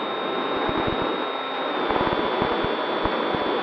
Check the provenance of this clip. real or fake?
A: real